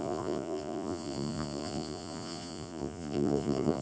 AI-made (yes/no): yes